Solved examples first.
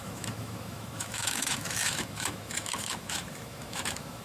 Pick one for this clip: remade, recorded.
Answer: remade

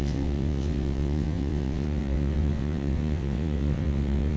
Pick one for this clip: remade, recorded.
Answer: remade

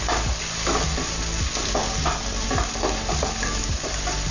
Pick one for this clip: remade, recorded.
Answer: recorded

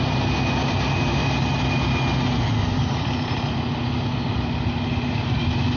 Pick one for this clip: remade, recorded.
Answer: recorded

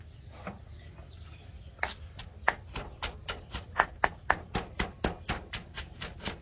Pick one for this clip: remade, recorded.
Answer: recorded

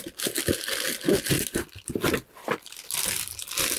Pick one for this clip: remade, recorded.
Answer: recorded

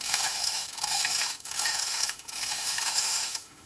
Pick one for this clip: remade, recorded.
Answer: remade